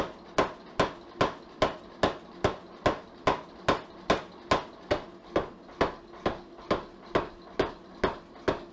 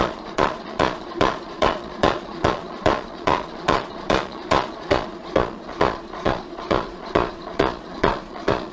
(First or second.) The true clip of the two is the first